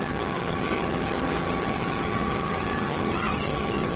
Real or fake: fake